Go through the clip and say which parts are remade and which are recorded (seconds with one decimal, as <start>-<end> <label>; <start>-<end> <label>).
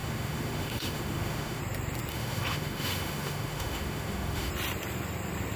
0.0-1.6 remade; 1.6-2.1 recorded; 2.1-4.5 remade; 4.5-5.6 recorded